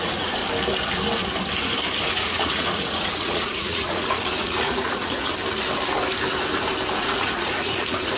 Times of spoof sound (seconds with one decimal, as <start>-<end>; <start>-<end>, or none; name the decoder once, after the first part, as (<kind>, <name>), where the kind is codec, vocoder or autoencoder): 0.0-0.4 (vocoder, Vocos); 2.1-5.3; 7.0-8.2